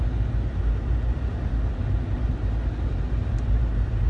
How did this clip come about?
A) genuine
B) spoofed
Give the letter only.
A